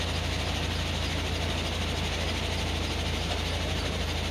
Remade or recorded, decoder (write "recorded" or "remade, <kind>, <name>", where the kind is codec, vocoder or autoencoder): recorded